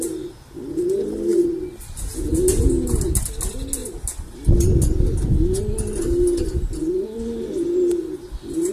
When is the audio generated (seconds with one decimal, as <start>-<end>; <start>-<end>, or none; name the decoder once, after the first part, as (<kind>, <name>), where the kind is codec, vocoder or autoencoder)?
none